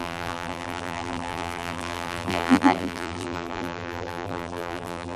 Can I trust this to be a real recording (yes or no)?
no